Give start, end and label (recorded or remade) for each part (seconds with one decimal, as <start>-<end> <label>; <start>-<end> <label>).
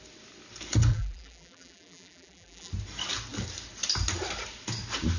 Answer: 0.0-0.9 recorded; 0.9-2.7 remade; 2.7-5.2 recorded